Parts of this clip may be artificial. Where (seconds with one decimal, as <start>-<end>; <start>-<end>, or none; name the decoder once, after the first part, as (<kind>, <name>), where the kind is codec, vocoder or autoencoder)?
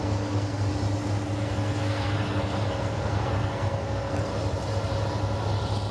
0.0-0.7 (codec, SNAC); 1.4-4.3